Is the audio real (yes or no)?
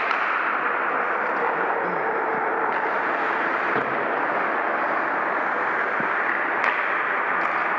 yes